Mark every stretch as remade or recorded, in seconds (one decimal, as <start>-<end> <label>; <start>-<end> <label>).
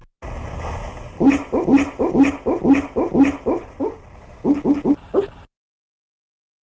0.0-6.6 recorded